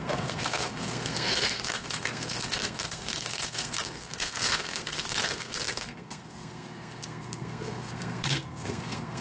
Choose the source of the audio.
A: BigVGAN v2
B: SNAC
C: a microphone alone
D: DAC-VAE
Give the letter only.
B